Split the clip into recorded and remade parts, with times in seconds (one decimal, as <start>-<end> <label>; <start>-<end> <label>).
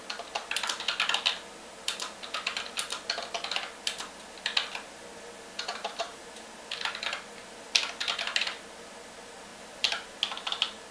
0.0-5.7 recorded; 5.7-6.2 remade; 6.2-9.5 recorded; 9.5-10.2 remade; 10.2-10.9 recorded